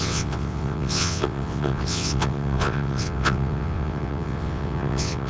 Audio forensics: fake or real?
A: fake